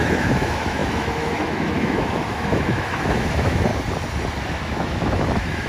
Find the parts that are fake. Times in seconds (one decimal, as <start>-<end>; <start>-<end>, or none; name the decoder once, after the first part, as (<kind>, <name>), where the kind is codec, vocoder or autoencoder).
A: 0.0-3.7 (autoencoder, DAC-VAE); 4.4-5.7